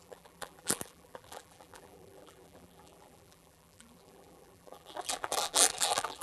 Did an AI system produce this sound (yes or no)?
yes